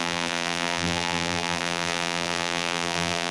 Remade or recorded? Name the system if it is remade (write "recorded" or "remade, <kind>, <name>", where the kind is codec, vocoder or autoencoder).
remade, vocoder, BigVGAN v2